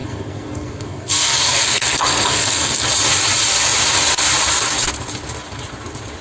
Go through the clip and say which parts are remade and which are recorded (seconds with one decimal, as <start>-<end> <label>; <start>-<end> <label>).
0.0-2.8 remade; 2.8-6.2 recorded